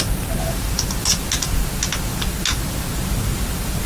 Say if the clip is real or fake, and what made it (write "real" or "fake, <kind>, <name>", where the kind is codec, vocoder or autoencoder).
real